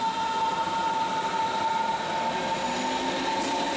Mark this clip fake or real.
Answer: real